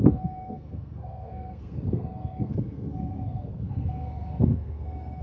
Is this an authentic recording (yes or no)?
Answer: no